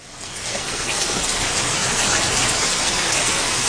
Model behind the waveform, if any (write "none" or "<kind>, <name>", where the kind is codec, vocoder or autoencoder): codec, SNAC